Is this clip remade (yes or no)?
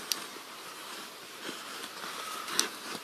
yes